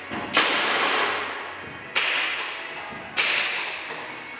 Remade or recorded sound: recorded